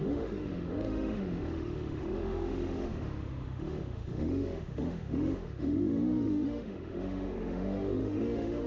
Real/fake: fake